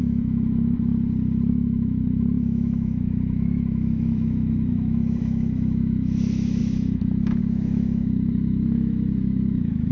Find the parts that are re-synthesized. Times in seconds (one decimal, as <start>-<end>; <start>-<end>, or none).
0.0-0.9; 1.5-9.9